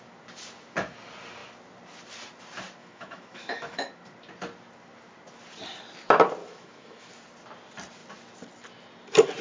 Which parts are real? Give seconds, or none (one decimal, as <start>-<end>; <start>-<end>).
0.0-2.8; 3.9-6.4; 7.1-9.4